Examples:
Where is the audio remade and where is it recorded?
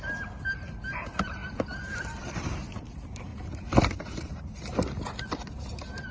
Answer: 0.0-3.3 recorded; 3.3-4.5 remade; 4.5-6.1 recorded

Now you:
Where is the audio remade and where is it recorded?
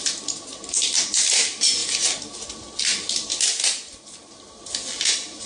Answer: 0.0-5.5 recorded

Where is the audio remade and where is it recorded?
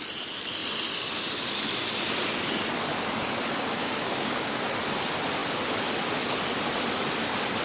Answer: 0.0-3.8 recorded; 3.8-4.6 remade; 4.6-7.6 recorded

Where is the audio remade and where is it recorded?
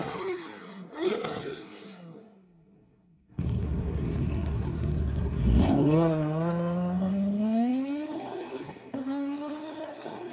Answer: 0.0-10.3 remade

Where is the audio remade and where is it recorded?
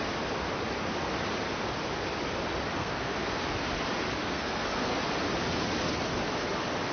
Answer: 0.0-2.8 recorded; 2.8-3.4 remade; 3.4-4.2 recorded; 4.2-5.0 remade; 5.0-6.9 recorded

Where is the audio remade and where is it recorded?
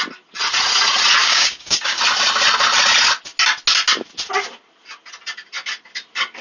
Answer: 0.0-1.2 recorded; 1.2-2.0 remade; 2.0-6.4 recorded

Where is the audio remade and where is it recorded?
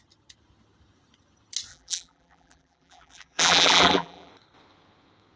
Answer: 0.0-1.7 recorded; 1.7-4.3 remade; 4.3-5.4 recorded